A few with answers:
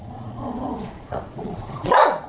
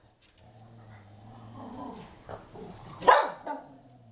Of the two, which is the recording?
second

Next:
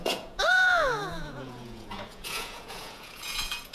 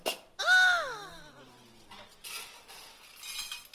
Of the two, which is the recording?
second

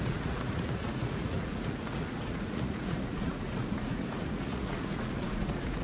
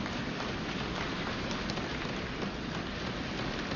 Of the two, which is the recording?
second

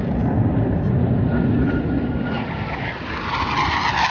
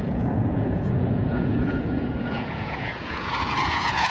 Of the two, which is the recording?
first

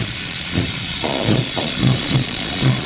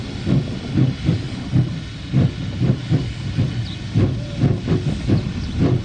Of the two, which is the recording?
second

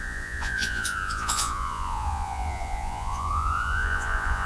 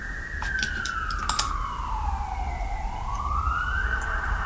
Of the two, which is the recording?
second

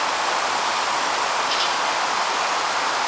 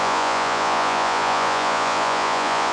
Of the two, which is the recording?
first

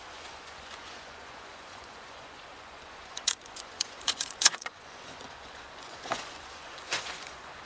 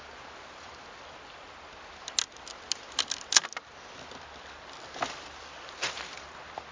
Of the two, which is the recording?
second